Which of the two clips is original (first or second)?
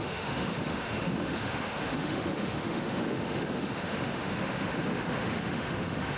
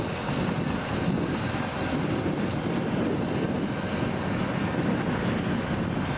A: second